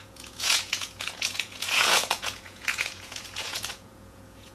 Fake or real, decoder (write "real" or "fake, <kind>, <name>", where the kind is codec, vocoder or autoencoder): fake, vocoder, Vocos